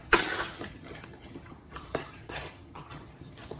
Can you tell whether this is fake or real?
fake